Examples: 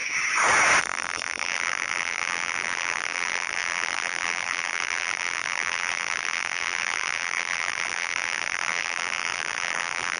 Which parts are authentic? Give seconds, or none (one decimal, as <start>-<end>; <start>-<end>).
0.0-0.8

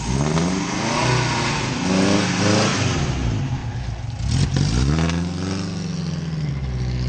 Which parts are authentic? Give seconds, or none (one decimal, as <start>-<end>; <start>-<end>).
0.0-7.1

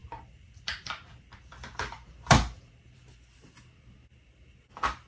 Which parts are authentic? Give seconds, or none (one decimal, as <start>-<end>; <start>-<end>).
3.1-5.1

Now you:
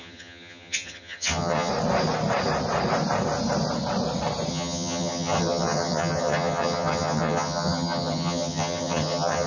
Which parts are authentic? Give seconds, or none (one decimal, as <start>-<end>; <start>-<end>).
1.7-4.5

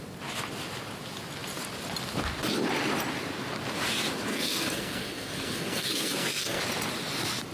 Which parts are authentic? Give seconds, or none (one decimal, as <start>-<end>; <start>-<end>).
0.0-4.3; 6.6-7.5

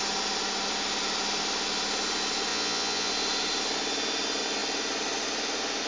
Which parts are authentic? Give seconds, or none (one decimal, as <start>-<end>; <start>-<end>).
0.0-2.5; 3.1-5.9

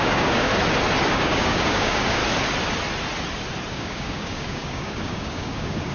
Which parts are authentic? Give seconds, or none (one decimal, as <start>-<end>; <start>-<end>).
0.5-1.1; 2.2-3.7

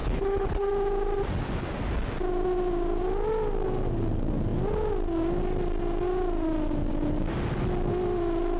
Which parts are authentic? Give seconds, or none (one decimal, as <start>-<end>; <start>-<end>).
0.7-8.6